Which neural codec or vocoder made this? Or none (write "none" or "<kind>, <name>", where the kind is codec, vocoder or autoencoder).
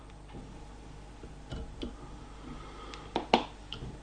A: none